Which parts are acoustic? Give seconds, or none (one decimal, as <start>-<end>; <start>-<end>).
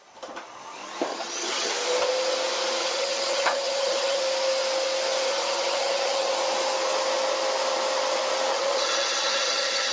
0.0-1.1; 1.7-2.8; 4.2-5.3; 6.3-8.5